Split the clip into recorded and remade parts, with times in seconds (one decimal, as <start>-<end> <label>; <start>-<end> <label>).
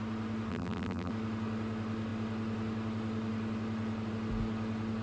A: 0.0-0.5 recorded; 0.5-1.1 remade; 1.1-5.0 recorded